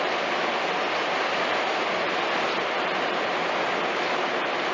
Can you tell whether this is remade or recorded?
recorded